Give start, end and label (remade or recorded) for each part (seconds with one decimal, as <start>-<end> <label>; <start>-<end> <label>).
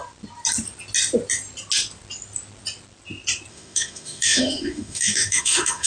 0.0-3.5 recorded; 3.5-5.9 remade